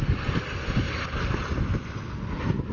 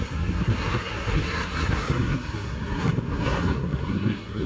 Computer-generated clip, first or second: second